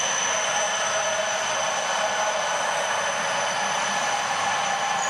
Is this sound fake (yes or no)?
no